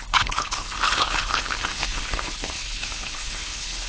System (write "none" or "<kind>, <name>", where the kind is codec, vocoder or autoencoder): codec, HILCodec